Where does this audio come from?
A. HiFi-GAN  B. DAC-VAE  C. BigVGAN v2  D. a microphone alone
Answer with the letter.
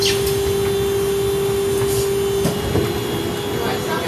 D